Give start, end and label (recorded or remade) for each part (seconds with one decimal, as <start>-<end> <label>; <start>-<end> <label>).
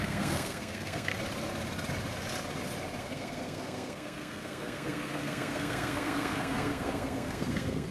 0.0-1.1 remade; 1.1-3.0 recorded; 3.0-7.9 remade